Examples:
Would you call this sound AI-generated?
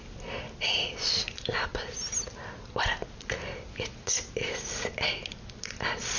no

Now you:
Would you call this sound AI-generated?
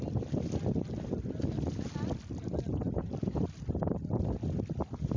no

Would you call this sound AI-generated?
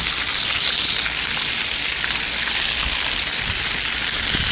no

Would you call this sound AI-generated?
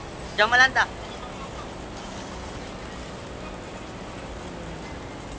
no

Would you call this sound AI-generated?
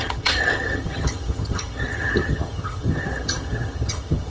yes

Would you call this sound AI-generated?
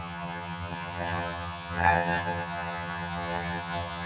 yes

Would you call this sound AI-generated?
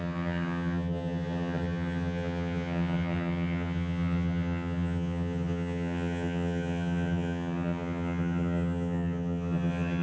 yes